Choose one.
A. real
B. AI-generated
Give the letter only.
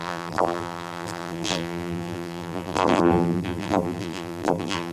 B